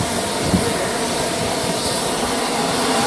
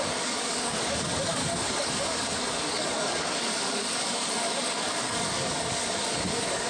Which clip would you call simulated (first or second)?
second